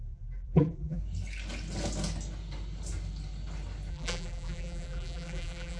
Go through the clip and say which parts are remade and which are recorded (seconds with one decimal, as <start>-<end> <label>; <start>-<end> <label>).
0.0-1.0 remade; 1.0-3.9 recorded; 3.9-5.8 remade